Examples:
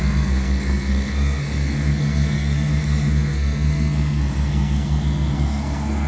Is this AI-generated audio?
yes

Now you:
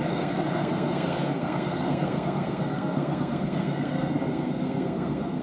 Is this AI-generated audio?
yes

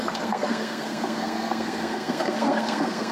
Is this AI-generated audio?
yes